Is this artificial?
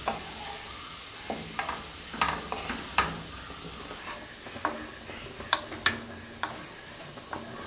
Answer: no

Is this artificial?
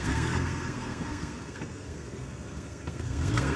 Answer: yes